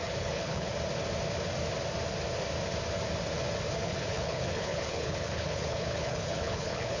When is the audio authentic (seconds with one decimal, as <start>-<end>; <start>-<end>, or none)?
0.7-3.8